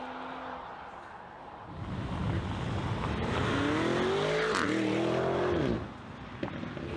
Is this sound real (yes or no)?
yes